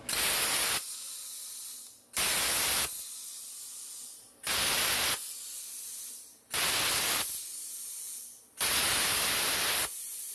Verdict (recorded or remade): recorded